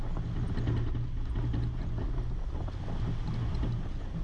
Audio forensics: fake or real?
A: real